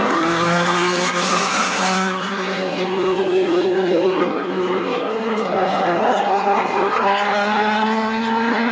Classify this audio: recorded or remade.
remade